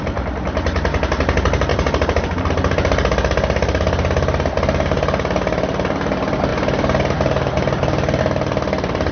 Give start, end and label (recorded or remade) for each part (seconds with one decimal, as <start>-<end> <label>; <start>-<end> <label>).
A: 0.0-1.7 recorded; 1.7-2.5 remade; 2.5-6.5 recorded; 6.5-8.2 remade; 8.2-9.1 recorded